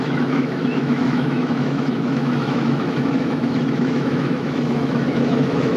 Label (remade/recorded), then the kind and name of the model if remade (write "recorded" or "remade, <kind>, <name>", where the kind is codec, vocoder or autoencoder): remade, autoencoder, DAC-VAE